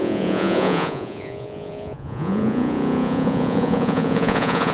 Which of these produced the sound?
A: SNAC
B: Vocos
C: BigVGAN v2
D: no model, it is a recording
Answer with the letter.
B